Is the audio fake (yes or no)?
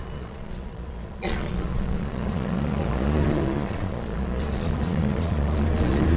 yes